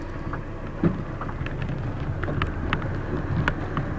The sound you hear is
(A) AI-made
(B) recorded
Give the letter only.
B